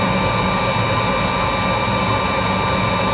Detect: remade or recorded recorded